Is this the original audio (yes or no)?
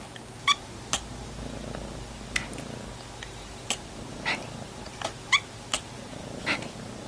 yes